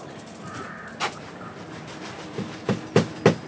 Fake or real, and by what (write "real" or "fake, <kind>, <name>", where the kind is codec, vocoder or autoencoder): real